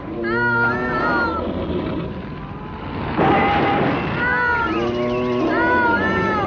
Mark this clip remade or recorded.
recorded